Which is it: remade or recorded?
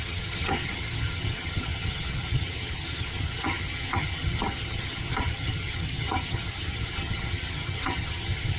remade